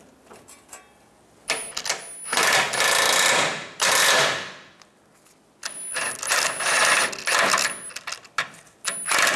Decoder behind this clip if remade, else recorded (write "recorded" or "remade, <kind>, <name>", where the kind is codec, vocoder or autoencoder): recorded